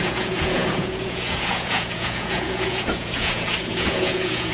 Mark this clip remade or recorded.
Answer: remade